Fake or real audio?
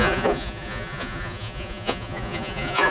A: fake